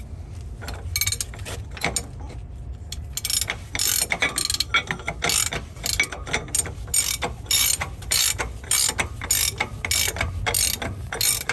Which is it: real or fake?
real